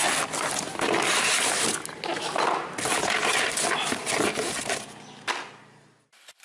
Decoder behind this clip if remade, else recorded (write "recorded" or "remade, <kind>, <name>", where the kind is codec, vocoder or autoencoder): recorded